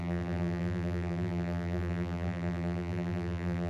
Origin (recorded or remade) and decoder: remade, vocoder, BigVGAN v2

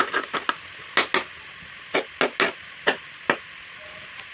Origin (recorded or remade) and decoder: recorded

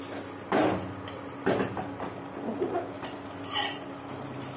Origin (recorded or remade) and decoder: remade, vocoder, BigVGAN v2